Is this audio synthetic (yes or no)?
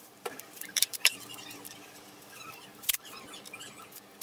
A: yes